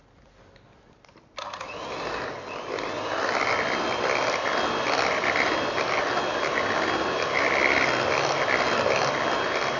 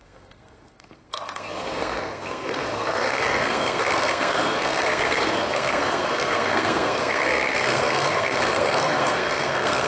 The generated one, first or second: second